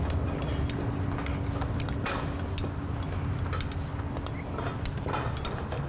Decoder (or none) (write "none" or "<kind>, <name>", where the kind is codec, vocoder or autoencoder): none